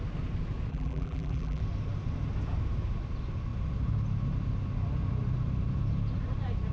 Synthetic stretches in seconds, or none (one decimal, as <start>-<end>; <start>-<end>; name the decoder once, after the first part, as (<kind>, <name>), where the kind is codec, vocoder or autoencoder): 0.7-1.6 (vocoder, BigVGAN v2)